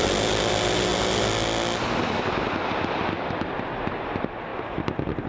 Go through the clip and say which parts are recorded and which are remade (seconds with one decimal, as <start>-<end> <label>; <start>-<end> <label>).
0.0-5.3 recorded